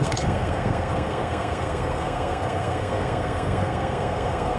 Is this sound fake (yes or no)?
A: yes